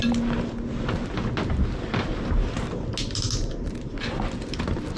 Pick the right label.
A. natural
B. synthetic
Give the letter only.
A